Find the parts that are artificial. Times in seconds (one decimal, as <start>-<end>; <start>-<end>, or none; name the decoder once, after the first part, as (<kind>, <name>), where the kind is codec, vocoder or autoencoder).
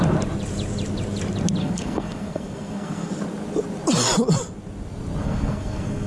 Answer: 1.6-3.1 (codec, SNAC); 5.2-6.1